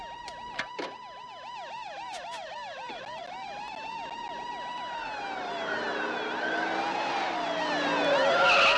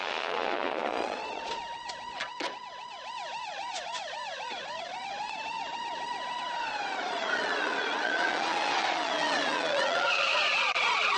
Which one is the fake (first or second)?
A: second